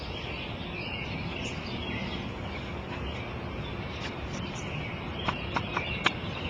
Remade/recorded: recorded